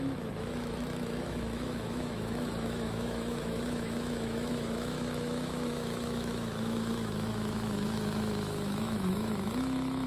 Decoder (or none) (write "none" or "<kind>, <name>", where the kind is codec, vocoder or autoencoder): autoencoder, DAC-VAE